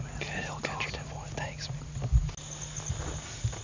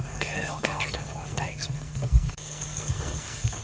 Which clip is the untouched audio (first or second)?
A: first